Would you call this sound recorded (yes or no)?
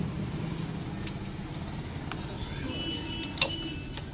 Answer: yes